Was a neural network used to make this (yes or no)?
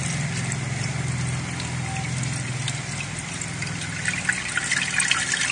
no